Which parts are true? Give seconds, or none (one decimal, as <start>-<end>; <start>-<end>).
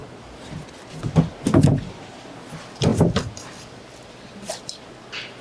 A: 0.0-2.9; 4.8-5.4